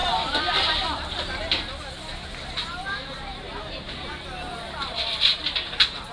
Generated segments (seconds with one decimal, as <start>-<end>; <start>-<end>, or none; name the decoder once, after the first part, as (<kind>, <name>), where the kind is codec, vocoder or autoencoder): 0.0-1.2 (vocoder, BigVGAN v2); 2.1-2.7; 3.3-6.1